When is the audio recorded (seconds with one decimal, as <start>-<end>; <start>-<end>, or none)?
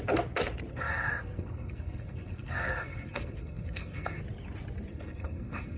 0.0-0.7; 4.2-4.9